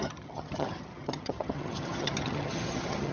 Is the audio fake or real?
fake